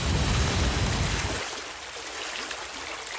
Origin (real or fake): real